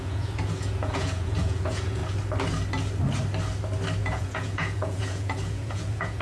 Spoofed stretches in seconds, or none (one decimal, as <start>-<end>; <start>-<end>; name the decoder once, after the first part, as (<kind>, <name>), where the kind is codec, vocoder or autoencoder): 0.0-2.0 (vocoder, Vocos); 4.0-6.2